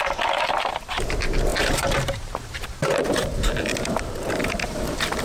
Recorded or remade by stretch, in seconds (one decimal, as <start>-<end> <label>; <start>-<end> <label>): 0.0-5.2 remade